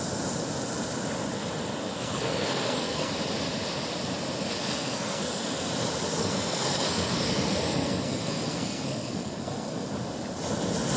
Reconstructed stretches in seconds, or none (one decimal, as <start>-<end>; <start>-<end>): 1.8-3.1; 4.6-5.7; 6.2-9.9